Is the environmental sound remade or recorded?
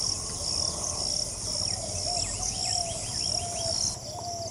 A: recorded